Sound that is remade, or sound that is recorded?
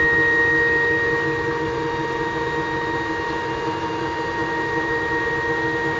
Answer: recorded